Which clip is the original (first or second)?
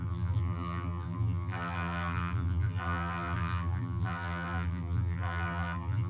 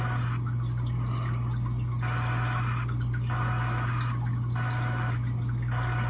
second